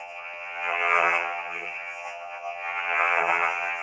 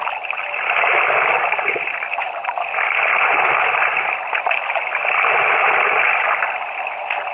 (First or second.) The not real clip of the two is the first